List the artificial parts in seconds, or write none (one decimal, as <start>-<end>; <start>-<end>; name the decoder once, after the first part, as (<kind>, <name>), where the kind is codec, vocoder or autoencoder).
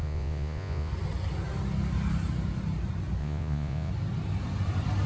0.0-0.9 (vocoder, Vocos); 3.2-3.9